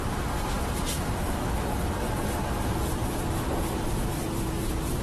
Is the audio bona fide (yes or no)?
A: no